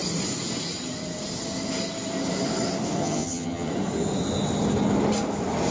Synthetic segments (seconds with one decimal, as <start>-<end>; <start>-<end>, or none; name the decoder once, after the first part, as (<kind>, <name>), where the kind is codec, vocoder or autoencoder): 3.0-3.7 (vocoder, HiFi-GAN)